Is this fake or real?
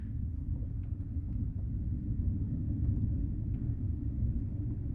real